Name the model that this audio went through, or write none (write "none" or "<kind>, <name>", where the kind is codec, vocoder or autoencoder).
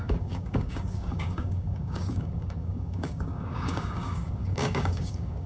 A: codec, DAC